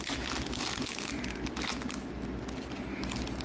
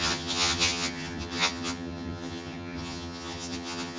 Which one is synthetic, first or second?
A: second